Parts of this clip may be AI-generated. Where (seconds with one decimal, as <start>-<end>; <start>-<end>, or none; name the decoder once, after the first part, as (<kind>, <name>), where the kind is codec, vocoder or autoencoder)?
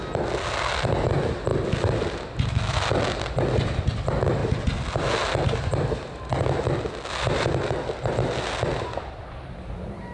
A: none